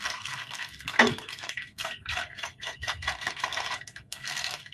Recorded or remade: remade